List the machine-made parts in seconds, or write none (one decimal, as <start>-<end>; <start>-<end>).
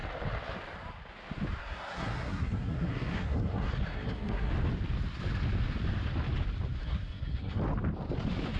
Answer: 1.6-4.5; 6.8-7.6